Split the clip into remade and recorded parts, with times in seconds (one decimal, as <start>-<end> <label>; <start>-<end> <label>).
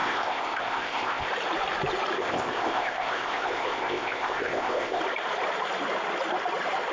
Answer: 0.0-1.3 remade; 1.3-2.2 recorded; 2.2-5.0 remade; 5.0-6.9 recorded